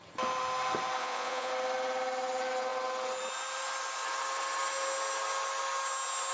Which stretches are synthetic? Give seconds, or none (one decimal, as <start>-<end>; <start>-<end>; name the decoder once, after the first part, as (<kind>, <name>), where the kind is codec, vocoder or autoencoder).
1.0-1.5 (vocoder, Vocos)